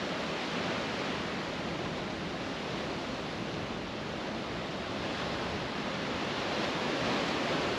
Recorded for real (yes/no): yes